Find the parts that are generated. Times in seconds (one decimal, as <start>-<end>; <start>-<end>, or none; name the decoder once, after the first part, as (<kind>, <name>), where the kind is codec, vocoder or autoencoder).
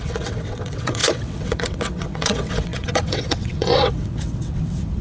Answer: 0.0-5.0 (vocoder, WaveNeXt)